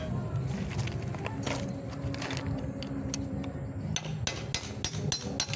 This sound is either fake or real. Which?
real